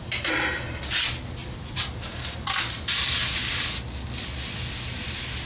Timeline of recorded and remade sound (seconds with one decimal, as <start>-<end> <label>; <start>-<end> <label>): 0.0-1.4 recorded; 1.4-4.7 remade; 4.7-5.5 recorded